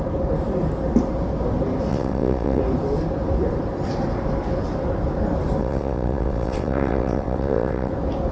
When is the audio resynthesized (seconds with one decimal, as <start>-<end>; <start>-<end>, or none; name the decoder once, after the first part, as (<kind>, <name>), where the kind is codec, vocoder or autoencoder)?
1.9-2.6 (vocoder, WaveNeXt); 5.6-7.9